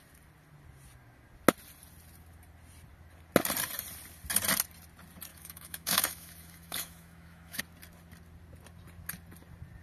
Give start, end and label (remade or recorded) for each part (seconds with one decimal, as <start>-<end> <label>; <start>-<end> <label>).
0.0-5.3 recorded; 5.3-7.6 remade; 7.6-9.8 recorded